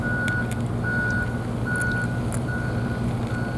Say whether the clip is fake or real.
real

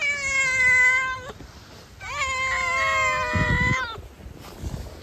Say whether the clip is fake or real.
real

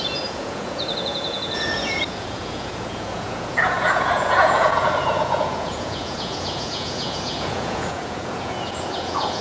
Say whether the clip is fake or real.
fake